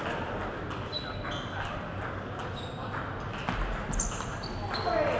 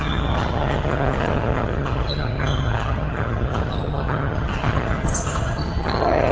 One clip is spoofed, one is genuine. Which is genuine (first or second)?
first